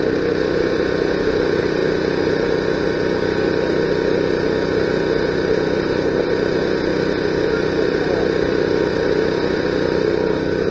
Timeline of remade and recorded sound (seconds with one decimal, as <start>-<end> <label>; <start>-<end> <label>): 0.0-10.7 recorded